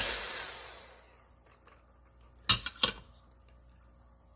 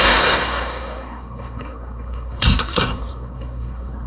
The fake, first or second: second